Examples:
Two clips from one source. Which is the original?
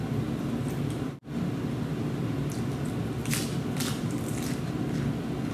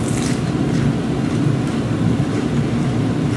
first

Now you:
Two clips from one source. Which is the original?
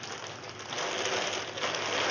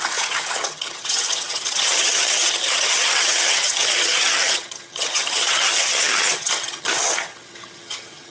first